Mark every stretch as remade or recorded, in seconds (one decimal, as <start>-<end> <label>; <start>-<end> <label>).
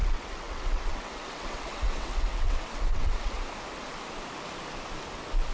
0.0-3.3 remade; 3.3-5.5 recorded